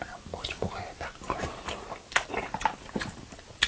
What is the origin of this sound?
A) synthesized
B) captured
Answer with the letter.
B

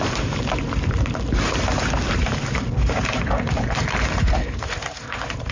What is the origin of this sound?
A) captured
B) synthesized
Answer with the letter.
B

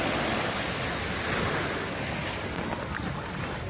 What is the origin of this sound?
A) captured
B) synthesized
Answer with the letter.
A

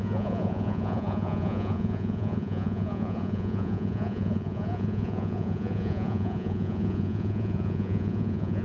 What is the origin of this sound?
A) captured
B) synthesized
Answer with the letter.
B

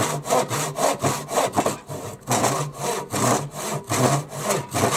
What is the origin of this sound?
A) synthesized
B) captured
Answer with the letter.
B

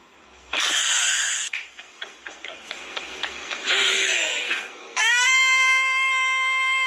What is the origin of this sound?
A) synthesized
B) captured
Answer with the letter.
A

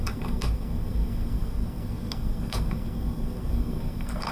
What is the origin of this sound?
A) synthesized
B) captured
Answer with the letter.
A